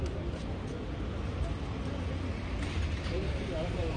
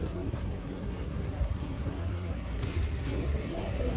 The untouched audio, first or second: first